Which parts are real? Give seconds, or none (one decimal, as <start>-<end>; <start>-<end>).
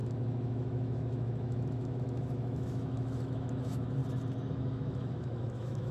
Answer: 4.0-4.5